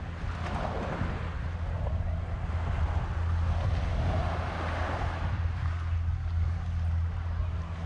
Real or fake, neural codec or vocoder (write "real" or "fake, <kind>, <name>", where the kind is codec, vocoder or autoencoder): real